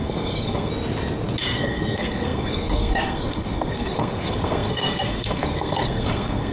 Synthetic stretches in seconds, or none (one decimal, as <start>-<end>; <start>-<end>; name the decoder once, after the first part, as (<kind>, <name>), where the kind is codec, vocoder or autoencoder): 0.0-0.7 (codec, SNAC); 1.4-6.5